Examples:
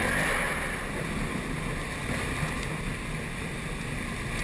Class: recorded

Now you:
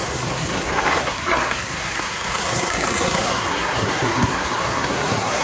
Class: remade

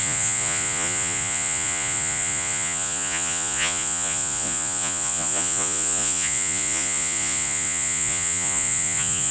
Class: remade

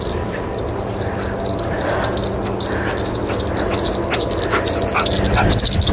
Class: recorded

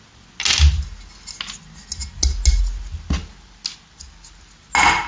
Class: recorded